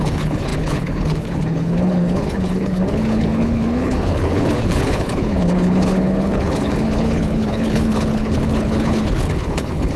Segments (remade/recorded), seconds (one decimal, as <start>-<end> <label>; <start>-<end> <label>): 0.0-10.0 remade